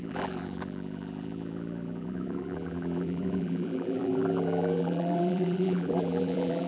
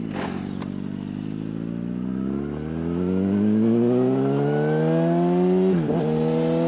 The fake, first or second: first